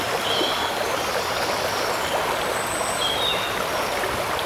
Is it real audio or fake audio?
real